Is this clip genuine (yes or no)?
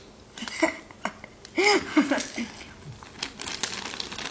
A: yes